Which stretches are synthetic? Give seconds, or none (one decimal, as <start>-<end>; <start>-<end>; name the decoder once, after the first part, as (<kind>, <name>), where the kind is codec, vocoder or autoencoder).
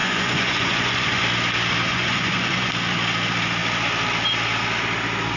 0.0-1.2 (vocoder, Vocos); 1.9-2.7